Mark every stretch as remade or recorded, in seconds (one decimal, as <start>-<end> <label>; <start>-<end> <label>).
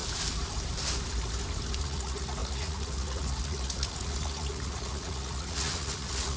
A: 0.0-1.8 recorded; 1.8-6.4 remade